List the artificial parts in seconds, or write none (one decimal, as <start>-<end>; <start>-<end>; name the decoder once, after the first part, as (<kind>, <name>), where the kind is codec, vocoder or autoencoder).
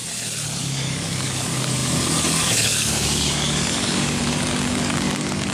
0.6-5.5 (codec, DAC)